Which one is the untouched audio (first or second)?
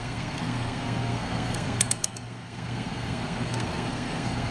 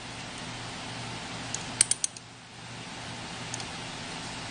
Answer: second